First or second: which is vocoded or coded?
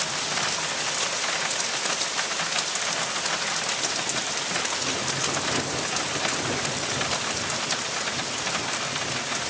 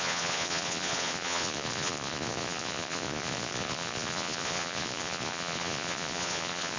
second